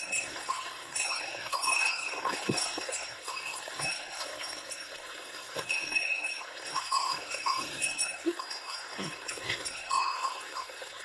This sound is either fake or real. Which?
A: fake